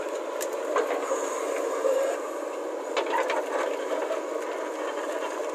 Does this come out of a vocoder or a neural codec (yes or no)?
no